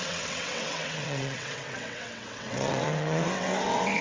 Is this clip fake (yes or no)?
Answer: yes